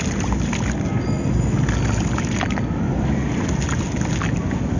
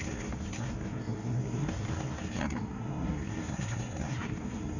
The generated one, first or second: second